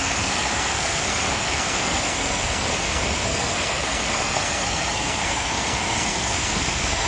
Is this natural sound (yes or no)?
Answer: no